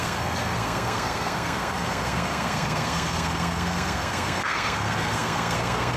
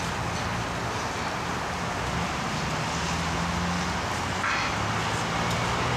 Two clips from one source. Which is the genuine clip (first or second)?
second